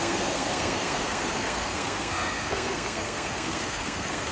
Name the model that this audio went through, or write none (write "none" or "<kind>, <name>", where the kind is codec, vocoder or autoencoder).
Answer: codec, SNAC